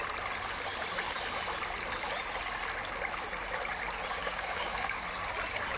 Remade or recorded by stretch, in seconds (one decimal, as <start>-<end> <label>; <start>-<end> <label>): 0.0-4.1 recorded; 4.1-5.0 remade; 5.0-5.8 recorded